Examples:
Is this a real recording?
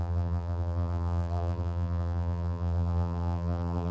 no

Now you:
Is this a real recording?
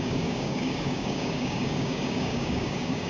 no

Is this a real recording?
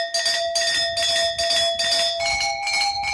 yes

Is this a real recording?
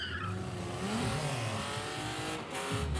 yes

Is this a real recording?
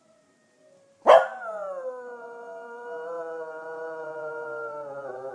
yes